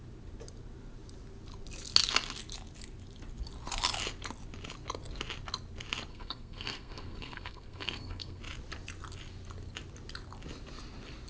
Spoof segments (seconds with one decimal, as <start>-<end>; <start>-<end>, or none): 6.1-8.4